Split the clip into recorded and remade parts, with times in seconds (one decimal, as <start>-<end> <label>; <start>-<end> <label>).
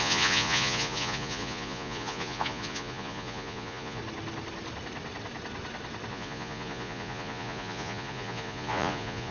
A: 0.0-4.0 remade; 4.0-6.1 recorded; 6.1-9.3 remade